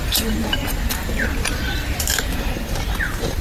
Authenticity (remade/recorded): remade